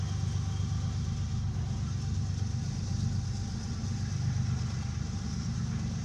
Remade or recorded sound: recorded